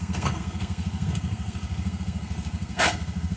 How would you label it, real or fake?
fake